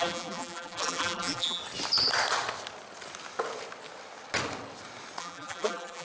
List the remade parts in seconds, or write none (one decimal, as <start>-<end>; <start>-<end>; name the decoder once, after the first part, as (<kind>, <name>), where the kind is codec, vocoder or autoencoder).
0.0-1.6 (vocoder, BigVGAN v2); 5.2-6.0